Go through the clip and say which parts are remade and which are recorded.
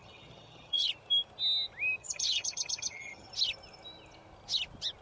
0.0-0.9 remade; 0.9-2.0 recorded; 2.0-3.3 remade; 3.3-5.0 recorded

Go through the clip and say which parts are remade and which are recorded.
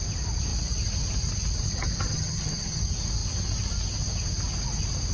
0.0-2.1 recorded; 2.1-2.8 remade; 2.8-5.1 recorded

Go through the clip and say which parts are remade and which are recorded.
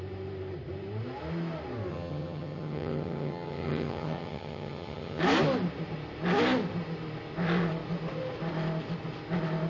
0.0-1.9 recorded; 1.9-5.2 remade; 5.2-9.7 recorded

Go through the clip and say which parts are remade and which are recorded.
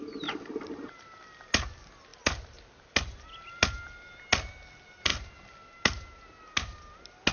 0.0-7.3 recorded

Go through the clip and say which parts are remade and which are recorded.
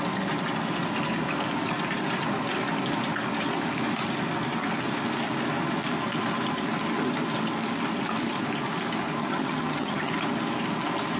0.0-9.2 recorded; 9.2-10.1 remade; 10.1-11.2 recorded